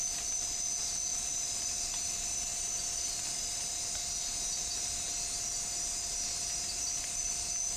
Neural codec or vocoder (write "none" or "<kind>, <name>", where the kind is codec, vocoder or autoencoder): none